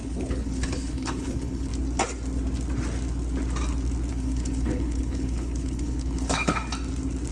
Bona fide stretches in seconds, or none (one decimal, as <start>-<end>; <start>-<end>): 1.7-4.1; 6.6-7.3